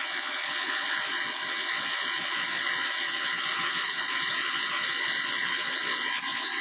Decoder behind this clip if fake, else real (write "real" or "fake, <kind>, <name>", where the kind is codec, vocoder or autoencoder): fake, vocoder, Vocos